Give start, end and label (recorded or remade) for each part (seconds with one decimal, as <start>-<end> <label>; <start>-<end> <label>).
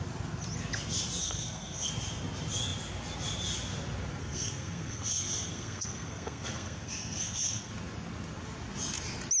0.0-1.2 recorded; 1.2-1.9 remade; 1.9-4.2 recorded; 4.2-7.7 remade; 7.7-9.4 recorded